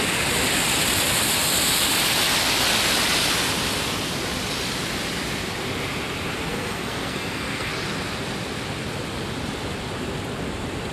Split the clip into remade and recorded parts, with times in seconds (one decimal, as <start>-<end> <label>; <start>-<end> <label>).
0.0-6.5 recorded; 6.5-7.7 remade; 7.7-10.9 recorded